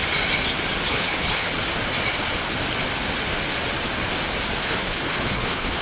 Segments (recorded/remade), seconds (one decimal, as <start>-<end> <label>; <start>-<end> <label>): 0.0-0.9 recorded; 0.9-1.5 remade; 1.5-4.6 recorded; 4.6-5.8 remade

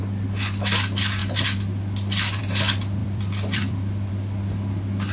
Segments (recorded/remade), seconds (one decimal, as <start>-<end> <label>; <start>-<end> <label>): 0.0-3.0 recorded; 3.0-4.1 remade; 4.1-5.1 recorded

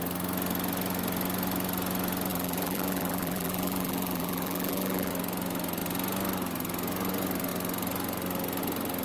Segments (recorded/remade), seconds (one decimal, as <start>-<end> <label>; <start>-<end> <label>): 0.0-2.3 recorded; 2.3-5.1 remade; 5.1-9.0 recorded

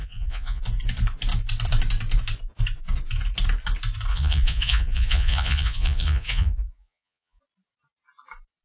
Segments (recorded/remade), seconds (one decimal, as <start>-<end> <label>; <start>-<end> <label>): 0.0-0.6 remade; 0.6-4.1 recorded; 4.1-7.4 remade; 7.4-8.6 recorded